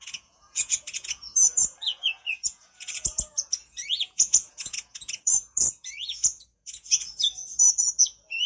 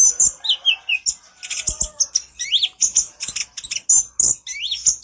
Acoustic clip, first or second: second